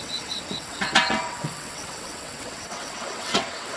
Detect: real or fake fake